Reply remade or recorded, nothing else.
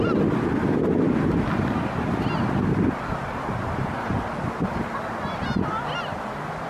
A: recorded